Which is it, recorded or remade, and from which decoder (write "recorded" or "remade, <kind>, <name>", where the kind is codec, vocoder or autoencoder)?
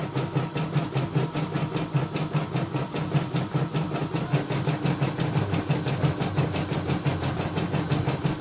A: recorded